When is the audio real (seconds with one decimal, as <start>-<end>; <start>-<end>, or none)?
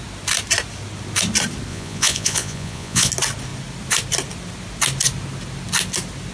0.0-1.7; 3.1-6.3